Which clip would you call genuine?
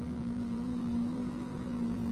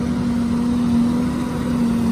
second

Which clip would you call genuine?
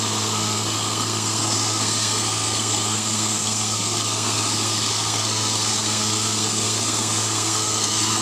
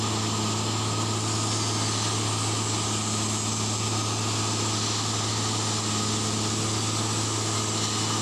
second